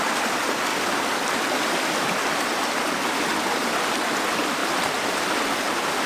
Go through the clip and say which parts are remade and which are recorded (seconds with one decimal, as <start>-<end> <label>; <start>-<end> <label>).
0.0-0.7 recorded; 0.7-1.9 remade; 1.9-2.5 recorded; 2.5-3.3 remade; 3.3-4.6 recorded; 4.6-5.2 remade; 5.2-6.1 recorded